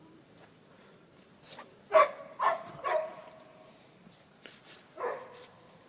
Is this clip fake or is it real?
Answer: fake